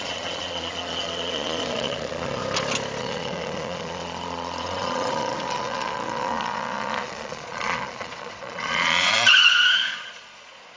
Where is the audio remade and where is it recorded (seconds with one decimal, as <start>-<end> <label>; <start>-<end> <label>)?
0.0-2.4 remade; 2.4-3.0 recorded; 3.0-10.8 remade

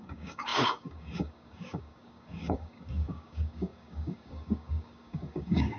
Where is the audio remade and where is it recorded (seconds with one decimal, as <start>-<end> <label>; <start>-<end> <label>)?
0.0-5.8 remade

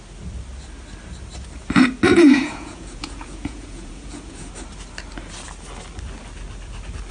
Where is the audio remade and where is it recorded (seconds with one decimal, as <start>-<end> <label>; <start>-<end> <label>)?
0.0-2.1 recorded; 2.1-4.5 remade; 4.5-7.1 recorded

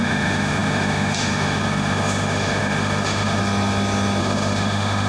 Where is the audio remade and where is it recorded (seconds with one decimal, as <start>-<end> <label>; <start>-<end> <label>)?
0.0-3.4 remade; 3.4-4.2 recorded; 4.2-5.1 remade

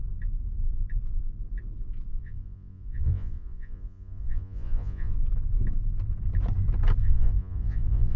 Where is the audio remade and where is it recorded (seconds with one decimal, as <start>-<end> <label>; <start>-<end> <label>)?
0.0-2.1 recorded; 2.1-5.1 remade; 5.1-7.0 recorded; 7.0-8.2 remade

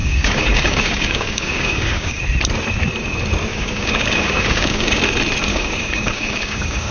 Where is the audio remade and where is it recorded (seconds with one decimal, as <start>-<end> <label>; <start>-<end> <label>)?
0.0-2.2 remade; 2.2-3.5 recorded; 3.5-5.0 remade; 5.0-5.5 recorded; 5.5-6.9 remade